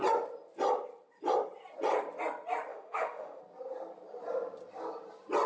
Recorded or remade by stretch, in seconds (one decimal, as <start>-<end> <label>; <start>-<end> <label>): 0.0-2.7 recorded; 2.7-3.4 remade; 3.4-5.5 recorded